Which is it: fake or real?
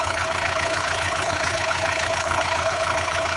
fake